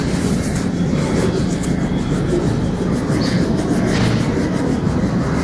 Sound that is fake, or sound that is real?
real